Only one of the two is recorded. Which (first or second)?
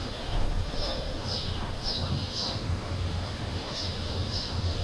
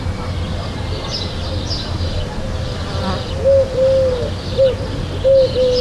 second